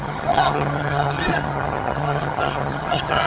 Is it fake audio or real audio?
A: fake